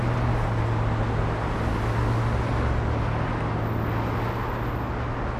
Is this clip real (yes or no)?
yes